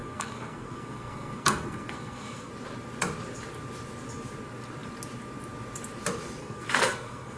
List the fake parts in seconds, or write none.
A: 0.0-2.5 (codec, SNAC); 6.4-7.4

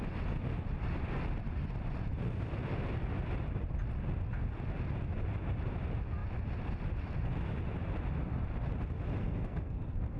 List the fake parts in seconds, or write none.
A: 9.2-10.2 (codec, SNAC)

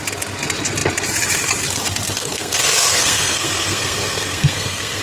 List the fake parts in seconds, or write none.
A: 2.2-5.0 (codec, SNAC)

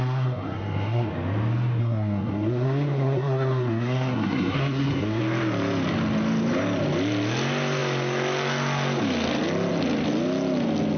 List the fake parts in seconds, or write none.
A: 0.0-1.1 (codec, SNAC); 1.8-5.2